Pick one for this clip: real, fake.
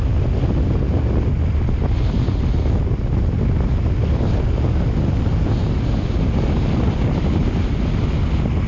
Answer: real